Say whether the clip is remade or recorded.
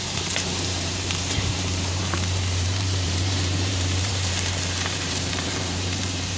remade